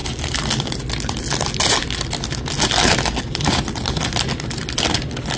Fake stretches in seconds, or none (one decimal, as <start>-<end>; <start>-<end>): none